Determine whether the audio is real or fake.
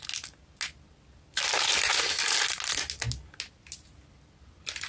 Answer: real